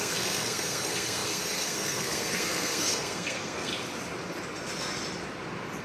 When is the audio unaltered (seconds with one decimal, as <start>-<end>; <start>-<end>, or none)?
3.7-5.8

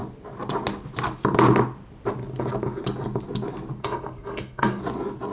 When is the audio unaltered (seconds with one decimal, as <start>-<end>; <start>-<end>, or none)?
0.0-3.8; 4.8-5.3

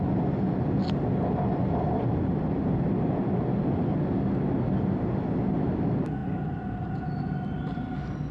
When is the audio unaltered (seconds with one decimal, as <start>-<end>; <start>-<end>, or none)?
0.0-8.3

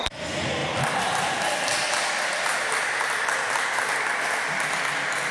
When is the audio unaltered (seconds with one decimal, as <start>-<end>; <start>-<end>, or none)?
0.0-5.3

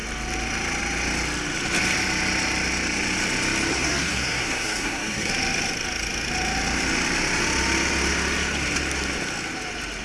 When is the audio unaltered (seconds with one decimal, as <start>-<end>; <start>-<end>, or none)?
0.0-3.7; 5.3-10.0

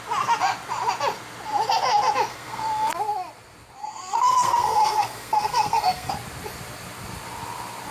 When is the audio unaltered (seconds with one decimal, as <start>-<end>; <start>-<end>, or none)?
0.0-2.3; 2.9-3.8; 6.1-7.9